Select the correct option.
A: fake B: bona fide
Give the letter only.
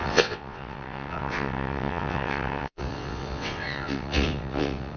A